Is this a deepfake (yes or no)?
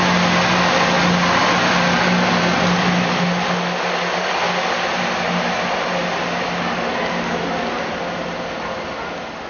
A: no